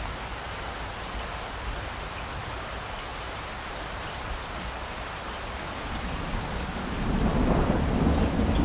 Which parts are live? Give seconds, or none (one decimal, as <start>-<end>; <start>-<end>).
0.0-3.1; 8.0-8.6